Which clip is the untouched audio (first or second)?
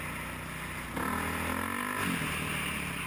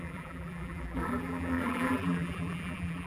first